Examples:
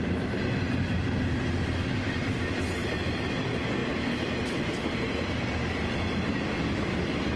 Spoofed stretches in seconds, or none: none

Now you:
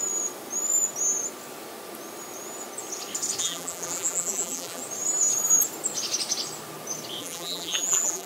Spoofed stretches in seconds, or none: 3.4-4.8 (vocoder, BigVGAN v2); 7.2-8.3

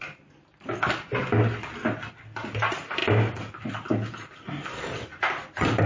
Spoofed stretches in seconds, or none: none

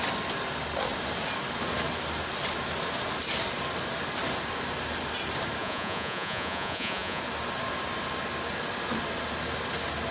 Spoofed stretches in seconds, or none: 5.6-7.2 (vocoder, Vocos)

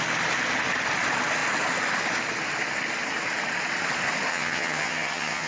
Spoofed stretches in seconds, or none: 4.3-5.5 (vocoder, HiFi-GAN)